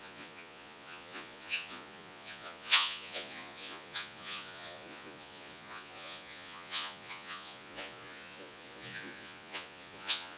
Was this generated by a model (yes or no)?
yes